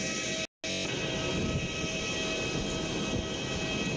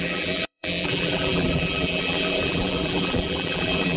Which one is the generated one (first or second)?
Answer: second